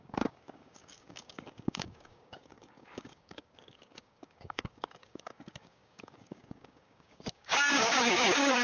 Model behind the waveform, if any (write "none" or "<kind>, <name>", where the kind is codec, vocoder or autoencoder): codec, DAC